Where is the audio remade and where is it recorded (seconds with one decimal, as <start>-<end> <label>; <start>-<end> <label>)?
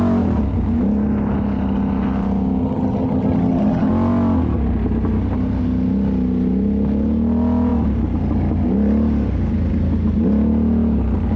0.0-2.6 recorded; 2.6-3.9 remade; 3.9-11.4 recorded